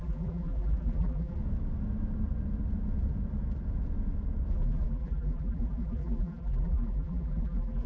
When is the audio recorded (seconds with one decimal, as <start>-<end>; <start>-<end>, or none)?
1.4-4.5